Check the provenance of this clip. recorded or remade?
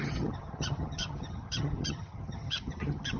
remade